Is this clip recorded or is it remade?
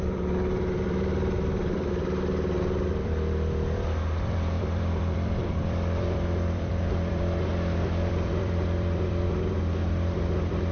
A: remade